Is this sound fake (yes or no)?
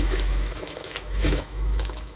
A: yes